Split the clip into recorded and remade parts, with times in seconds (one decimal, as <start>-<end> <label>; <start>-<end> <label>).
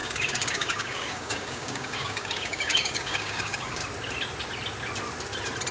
0.0-3.8 remade; 3.8-5.7 recorded